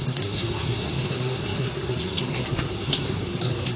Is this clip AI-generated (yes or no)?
yes